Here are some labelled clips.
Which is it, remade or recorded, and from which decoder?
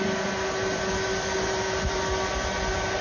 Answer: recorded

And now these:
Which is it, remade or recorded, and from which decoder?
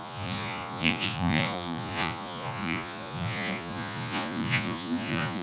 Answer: remade, vocoder, Vocos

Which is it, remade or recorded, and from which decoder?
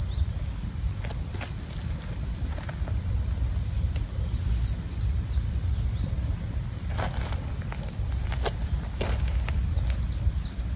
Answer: recorded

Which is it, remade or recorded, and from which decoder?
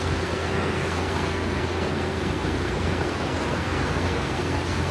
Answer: remade, codec, SNAC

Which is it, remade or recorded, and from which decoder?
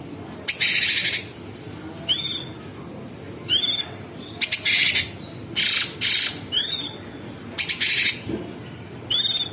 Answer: recorded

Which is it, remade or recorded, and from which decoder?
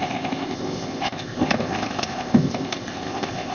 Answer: remade, codec, ZipCodec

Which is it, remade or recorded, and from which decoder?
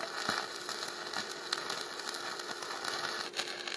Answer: recorded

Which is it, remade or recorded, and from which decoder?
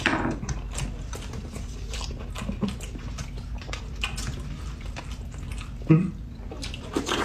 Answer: recorded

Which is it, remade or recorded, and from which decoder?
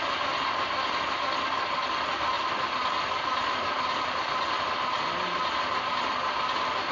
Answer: recorded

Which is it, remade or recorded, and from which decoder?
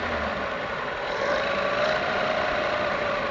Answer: recorded